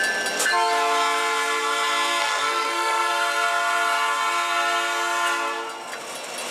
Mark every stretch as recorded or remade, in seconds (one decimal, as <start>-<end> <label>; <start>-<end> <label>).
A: 0.0-2.2 recorded; 2.2-3.1 remade; 3.1-6.5 recorded